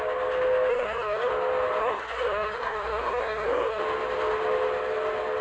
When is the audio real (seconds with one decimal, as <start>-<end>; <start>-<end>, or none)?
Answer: 0.0-0.7; 1.3-1.8; 3.8-5.4